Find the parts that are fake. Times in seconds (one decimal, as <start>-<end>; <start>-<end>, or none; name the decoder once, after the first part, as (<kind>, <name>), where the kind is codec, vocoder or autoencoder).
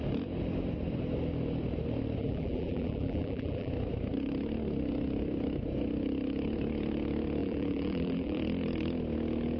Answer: 2.2-3.7 (vocoder, BigVGAN v2); 7.4-8.4